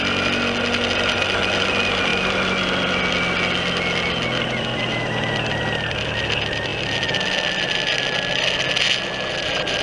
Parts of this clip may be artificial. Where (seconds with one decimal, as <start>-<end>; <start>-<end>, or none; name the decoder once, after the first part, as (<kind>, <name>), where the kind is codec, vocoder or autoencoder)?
2.1-3.0 (vocoder, BigVGAN v2)